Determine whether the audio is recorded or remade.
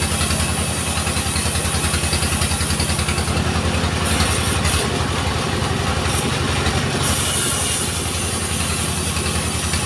recorded